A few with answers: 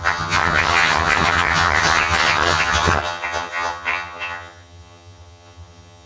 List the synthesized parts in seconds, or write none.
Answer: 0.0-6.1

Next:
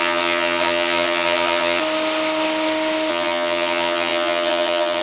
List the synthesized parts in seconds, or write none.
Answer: 0.0-1.8; 3.1-5.0

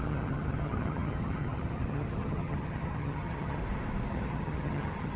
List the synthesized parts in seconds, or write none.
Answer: 0.0-3.6; 4.1-5.2

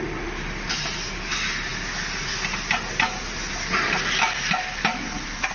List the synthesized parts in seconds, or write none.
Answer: none

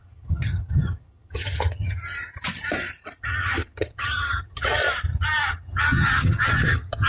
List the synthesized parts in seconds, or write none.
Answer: 0.0-2.0; 3.2-4.8; 5.5-7.1

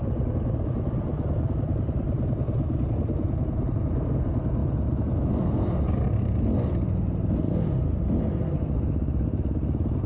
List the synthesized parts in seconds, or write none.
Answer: none